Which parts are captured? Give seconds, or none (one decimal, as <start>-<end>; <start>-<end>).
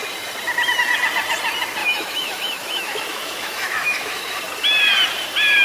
0.0-1.8; 4.4-5.6